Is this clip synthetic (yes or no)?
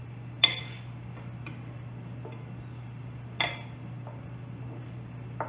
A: no